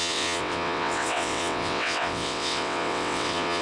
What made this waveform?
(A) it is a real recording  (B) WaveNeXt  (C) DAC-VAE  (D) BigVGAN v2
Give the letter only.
B